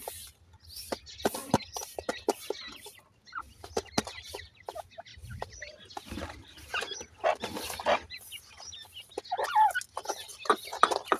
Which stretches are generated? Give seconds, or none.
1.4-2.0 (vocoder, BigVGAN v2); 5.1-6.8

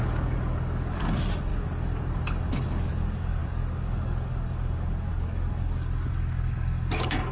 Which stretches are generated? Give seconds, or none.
0.0-7.3 (codec, DAC)

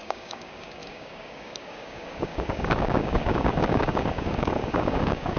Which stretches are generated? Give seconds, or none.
0.0-5.4 (codec, DAC)

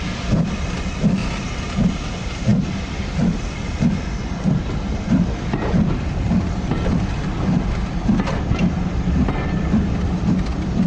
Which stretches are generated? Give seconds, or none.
0.0-1.2 (vocoder, BigVGAN v2); 1.9-10.9

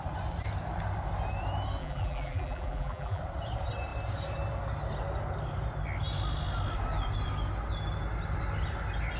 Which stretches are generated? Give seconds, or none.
1.8-3.2 (vocoder, BigVGAN v2)

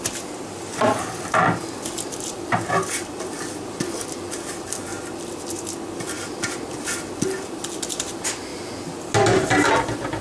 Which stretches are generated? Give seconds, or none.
none

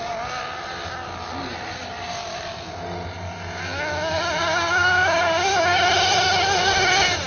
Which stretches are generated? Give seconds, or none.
4.4-5.8 (codec, DAC)